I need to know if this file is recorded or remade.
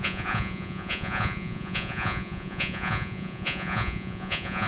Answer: remade